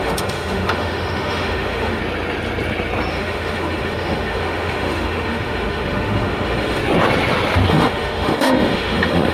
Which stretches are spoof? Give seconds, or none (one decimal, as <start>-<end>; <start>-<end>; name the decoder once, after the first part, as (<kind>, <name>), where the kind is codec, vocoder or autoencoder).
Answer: 0.0-2.0 (autoencoder, DAC-VAE); 3.1-6.8; 7.7-9.3